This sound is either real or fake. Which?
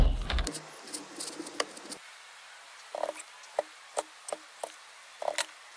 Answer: real